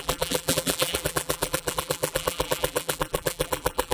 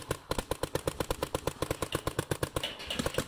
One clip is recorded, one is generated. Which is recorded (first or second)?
second